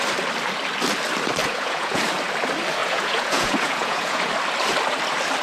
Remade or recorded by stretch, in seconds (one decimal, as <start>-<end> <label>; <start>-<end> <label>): 0.0-1.4 recorded; 1.4-2.0 remade; 2.0-2.8 recorded; 2.8-4.3 remade; 4.3-5.4 recorded